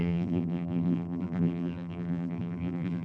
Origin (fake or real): fake